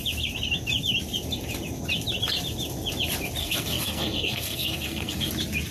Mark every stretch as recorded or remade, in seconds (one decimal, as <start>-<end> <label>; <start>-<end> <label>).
0.0-3.4 recorded; 3.4-5.3 remade; 5.3-5.7 recorded